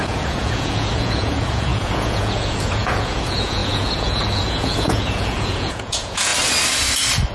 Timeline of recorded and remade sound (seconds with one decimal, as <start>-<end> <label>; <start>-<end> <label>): 0.0-6.3 remade; 6.3-7.3 recorded